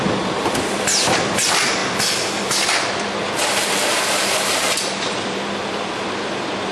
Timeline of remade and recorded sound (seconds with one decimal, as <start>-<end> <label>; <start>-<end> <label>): 0.0-6.7 remade